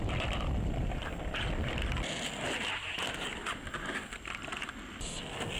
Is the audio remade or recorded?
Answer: recorded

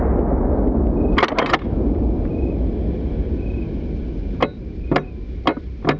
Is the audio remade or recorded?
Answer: recorded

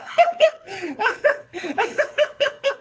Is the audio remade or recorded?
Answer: remade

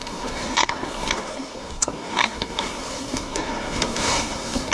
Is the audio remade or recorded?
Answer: remade